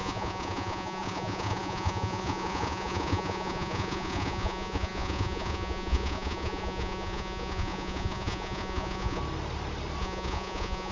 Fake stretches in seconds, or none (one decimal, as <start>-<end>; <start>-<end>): 0.0-9.2; 10.0-10.9

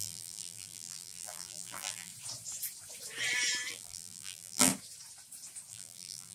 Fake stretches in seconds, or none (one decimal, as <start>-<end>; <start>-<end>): 0.0-2.1; 3.7-4.7; 5.7-6.3